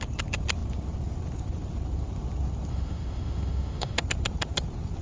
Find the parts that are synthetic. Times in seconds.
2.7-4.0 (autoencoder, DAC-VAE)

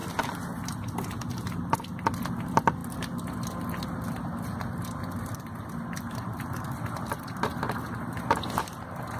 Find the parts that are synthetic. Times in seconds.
none

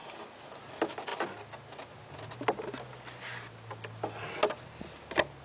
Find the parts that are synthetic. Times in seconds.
none

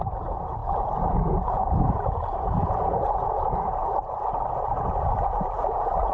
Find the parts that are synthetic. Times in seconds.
0.0-6.1 (vocoder, Vocos)

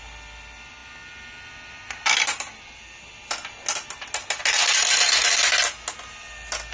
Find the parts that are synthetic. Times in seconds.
none

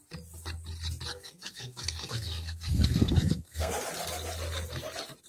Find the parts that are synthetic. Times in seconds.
1.1-3.7 (codec, SNAC)

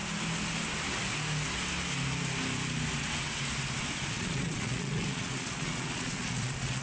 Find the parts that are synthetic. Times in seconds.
4.1-6.8 (vocoder, Vocos)

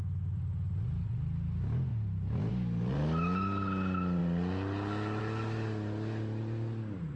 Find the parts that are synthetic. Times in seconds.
none